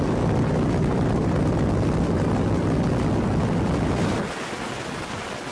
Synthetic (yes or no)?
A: no